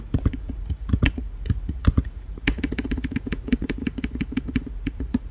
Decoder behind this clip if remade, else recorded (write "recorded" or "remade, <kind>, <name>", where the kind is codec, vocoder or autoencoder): remade, vocoder, Vocos